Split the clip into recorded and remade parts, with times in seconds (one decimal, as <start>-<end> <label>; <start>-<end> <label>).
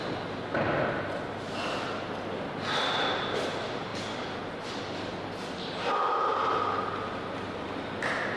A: 0.0-8.4 recorded